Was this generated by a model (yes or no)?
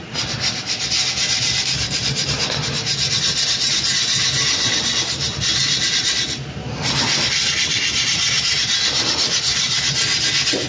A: no